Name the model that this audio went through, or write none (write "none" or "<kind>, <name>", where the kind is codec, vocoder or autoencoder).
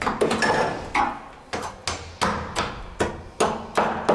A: none